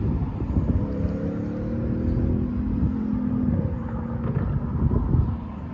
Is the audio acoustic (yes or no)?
yes